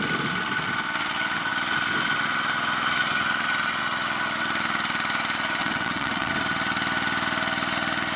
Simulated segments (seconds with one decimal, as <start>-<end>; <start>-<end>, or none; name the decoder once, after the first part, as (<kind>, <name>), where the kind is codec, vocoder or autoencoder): 5.6-6.3 (vocoder, WaveNeXt)